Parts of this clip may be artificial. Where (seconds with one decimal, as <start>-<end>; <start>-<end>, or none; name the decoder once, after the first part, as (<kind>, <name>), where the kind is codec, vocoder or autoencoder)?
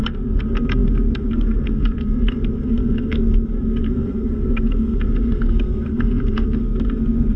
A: 0.0-7.4 (codec, SNAC)